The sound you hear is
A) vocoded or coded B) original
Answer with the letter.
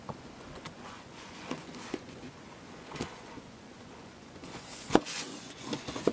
A